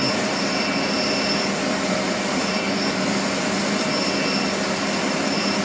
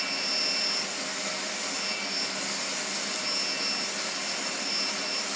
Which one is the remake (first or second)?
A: first